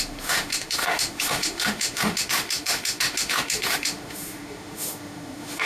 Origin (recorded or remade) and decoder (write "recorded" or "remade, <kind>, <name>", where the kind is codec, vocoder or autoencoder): remade, autoencoder, DAC-VAE